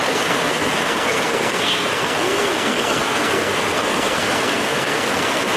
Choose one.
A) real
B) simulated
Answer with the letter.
B